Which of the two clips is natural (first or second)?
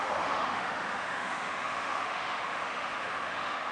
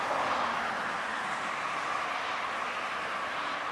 second